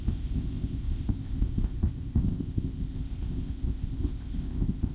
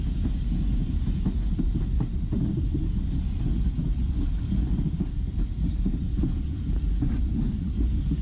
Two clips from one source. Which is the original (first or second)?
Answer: second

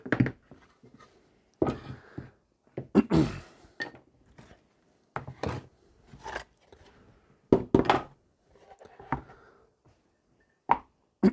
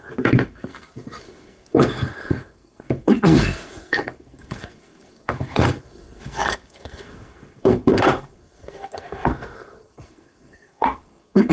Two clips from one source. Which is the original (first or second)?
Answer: first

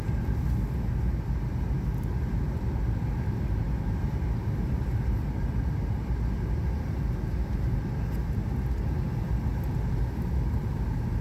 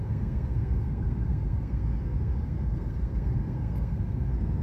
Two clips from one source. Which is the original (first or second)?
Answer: first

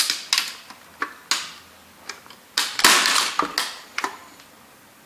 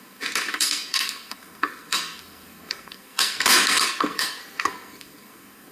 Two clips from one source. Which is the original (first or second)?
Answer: first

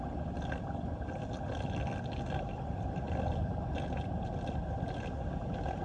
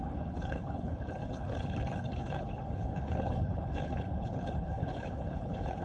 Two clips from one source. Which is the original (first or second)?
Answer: first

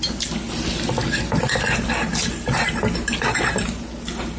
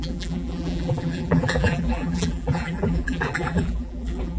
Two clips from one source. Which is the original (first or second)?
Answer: first